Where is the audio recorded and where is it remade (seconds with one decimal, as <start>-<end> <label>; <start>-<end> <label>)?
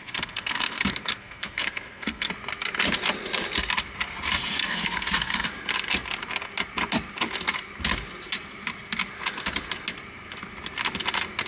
0.0-2.3 remade; 2.3-4.6 recorded; 4.6-5.5 remade; 5.5-11.5 recorded